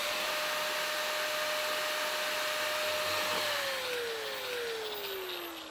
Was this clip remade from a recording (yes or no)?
no